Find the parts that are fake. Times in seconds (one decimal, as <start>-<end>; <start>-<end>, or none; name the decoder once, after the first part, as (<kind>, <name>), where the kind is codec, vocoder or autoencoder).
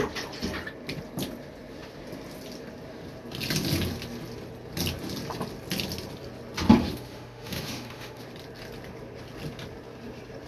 6.8-8.2 (autoencoder, DAC-VAE)